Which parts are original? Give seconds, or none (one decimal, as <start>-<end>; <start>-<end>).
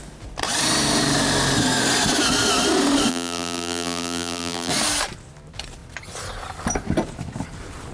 0.0-3.1; 4.7-7.9